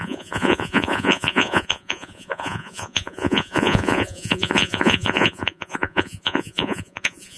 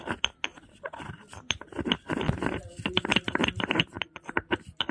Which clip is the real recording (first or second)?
second